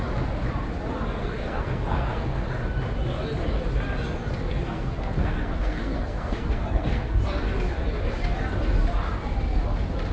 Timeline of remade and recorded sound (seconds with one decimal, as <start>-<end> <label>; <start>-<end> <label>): 0.0-1.2 recorded; 1.2-2.5 remade; 2.5-4.5 recorded; 4.5-7.2 remade; 7.2-10.1 recorded